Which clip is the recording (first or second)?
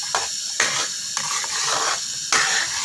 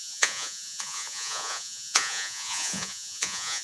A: first